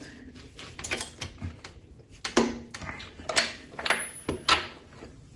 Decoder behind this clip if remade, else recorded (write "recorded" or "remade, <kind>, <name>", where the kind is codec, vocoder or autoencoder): recorded